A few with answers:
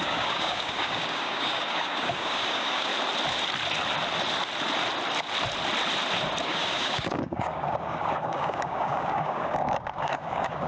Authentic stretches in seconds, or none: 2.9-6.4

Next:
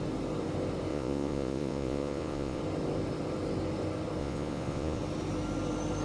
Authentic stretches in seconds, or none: 0.0-0.9; 2.6-4.2; 5.0-6.0

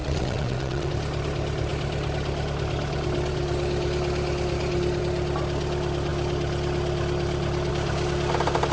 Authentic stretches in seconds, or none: 0.9-8.7

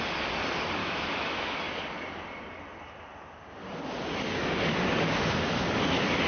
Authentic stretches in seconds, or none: 0.0-0.8; 1.6-6.3

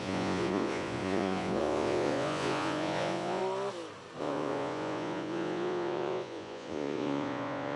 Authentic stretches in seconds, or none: 3.4-4.2

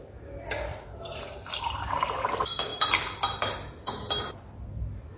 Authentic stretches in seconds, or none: 0.0-0.7; 2.3-5.2

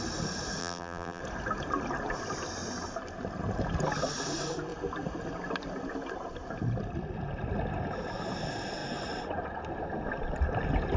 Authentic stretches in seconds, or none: 0.0-0.6; 1.2-11.0

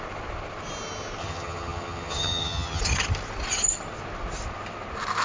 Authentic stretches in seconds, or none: 0.0-1.2; 2.8-5.2